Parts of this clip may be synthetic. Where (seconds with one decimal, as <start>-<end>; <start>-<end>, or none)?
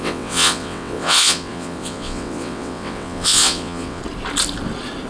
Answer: 0.0-4.0